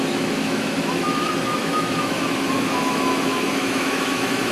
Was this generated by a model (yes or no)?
yes